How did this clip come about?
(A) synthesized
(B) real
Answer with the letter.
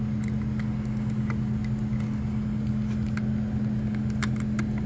B